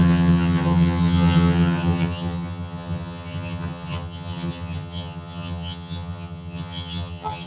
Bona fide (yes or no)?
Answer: no